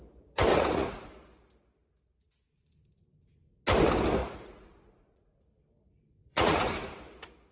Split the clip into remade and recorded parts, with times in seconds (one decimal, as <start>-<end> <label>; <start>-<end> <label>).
0.0-0.5 recorded; 0.5-1.1 remade; 1.1-4.2 recorded; 4.2-5.4 remade; 5.4-6.3 recorded; 6.3-6.9 remade; 6.9-7.5 recorded